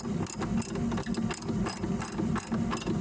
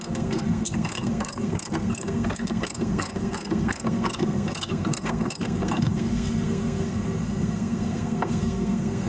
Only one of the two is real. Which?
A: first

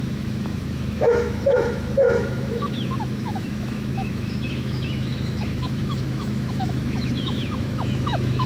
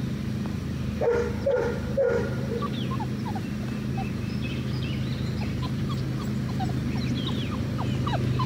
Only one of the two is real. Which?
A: second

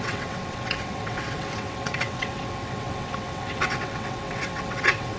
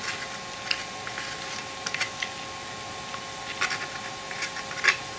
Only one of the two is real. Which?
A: second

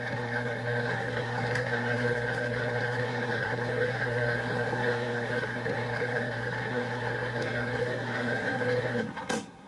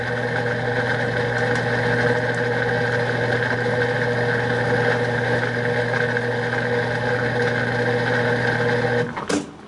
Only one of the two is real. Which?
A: second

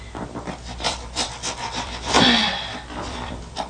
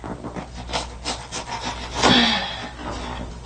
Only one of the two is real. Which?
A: second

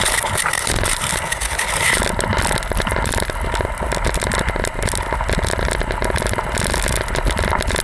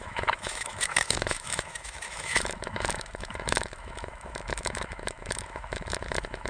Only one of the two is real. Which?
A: first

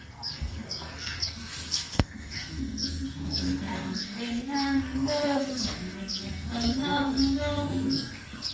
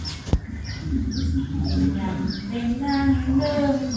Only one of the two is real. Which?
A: second